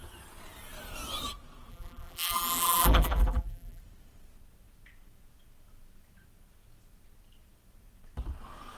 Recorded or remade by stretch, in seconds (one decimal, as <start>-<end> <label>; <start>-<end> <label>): 0.0-1.7 recorded; 1.7-3.8 remade; 3.8-8.8 recorded

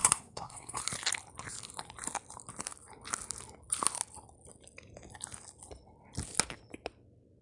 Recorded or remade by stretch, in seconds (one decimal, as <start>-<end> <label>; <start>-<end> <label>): 0.0-0.8 remade; 0.8-7.4 recorded